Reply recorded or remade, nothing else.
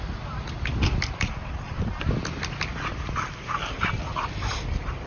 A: remade